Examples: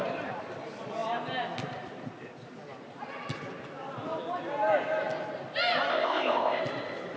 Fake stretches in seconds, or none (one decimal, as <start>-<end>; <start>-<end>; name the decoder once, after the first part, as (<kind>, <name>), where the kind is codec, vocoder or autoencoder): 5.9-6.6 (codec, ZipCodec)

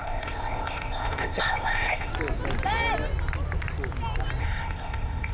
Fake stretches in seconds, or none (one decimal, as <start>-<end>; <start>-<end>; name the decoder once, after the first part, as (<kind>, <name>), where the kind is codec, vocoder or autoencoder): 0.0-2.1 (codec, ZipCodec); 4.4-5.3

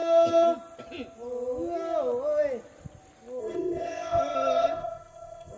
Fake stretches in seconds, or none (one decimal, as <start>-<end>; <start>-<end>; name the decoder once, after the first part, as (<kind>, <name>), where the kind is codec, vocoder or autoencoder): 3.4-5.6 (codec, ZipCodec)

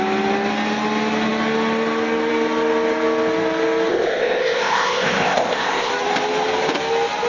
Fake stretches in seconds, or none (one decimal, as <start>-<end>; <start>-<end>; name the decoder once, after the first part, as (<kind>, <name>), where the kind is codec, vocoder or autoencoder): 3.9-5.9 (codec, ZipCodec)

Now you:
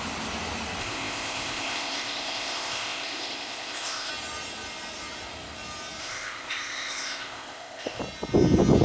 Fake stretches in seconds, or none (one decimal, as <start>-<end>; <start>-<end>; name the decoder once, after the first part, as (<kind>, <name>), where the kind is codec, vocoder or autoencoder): 0.8-4.1 (codec, ZipCodec); 6.0-8.0